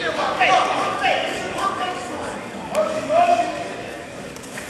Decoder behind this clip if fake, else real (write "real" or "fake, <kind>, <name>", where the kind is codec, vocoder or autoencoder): fake, codec, DAC